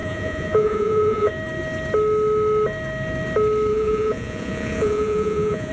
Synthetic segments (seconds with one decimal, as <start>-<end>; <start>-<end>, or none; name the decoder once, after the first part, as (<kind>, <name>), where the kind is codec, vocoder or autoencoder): 0.0-1.3 (vocoder, Vocos); 3.7-5.7